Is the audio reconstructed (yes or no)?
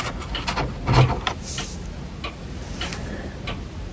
no